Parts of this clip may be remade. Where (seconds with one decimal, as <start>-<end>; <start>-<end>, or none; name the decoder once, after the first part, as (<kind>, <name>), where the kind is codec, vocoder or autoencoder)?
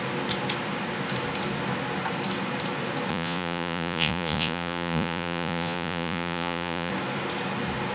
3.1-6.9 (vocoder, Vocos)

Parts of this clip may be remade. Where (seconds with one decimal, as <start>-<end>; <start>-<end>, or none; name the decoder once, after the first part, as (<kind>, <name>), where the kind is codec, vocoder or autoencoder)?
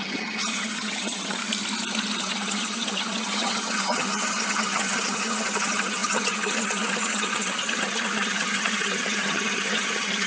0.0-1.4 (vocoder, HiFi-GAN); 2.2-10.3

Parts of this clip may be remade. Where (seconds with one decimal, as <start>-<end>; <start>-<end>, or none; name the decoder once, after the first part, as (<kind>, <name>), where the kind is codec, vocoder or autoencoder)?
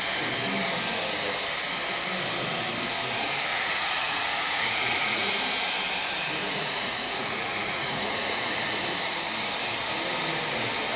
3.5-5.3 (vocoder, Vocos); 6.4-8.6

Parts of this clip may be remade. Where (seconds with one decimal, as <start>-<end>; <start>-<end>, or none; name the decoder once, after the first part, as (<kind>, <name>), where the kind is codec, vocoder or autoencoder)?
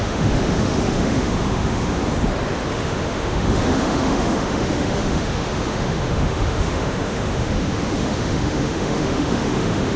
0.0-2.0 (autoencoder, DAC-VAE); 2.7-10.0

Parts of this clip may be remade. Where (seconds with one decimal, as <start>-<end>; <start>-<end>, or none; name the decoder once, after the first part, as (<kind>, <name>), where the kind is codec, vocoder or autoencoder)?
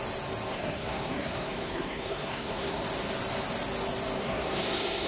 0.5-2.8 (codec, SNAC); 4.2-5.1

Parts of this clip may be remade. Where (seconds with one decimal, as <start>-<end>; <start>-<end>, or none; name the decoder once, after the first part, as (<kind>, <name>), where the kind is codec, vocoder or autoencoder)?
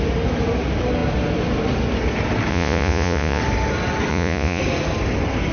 2.5-3.4 (vocoder, Vocos); 4.1-4.6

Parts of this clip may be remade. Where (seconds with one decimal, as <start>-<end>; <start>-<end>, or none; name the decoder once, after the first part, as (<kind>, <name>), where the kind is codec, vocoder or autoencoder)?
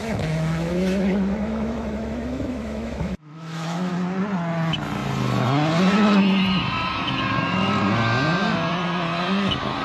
0.0-3.9 (autoencoder, DAC-VAE)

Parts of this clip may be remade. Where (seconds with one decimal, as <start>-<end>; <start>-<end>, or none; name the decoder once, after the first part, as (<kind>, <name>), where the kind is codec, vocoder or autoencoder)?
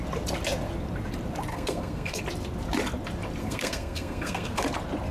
1.5-2.2 (codec, SNAC); 3.4-4.6